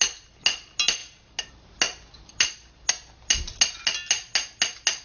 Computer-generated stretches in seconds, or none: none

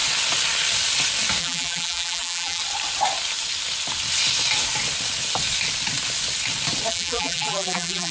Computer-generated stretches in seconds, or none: 1.4-2.6 (vocoder, BigVGAN v2); 6.9-8.1

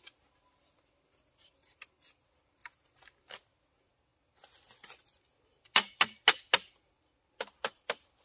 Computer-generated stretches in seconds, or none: none

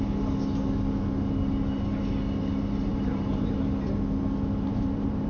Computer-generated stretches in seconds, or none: 2.9-3.6 (vocoder, BigVGAN v2); 4.7-5.3

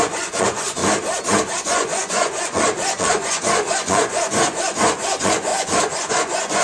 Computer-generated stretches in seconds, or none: 0.0-0.8 (vocoder, Vocos); 1.6-6.6

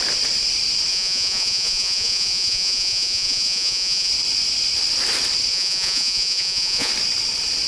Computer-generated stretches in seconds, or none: 0.9-4.1 (vocoder, Vocos); 5.5-6.9

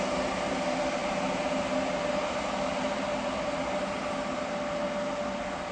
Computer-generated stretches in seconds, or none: none